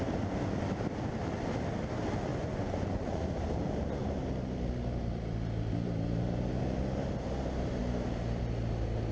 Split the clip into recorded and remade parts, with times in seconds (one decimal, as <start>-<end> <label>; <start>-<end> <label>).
0.0-2.3 recorded; 2.3-3.2 remade; 3.2-9.1 recorded